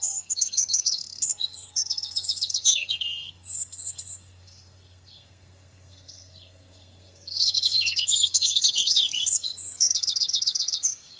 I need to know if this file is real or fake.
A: fake